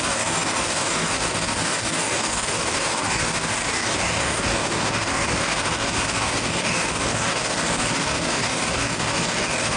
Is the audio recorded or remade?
remade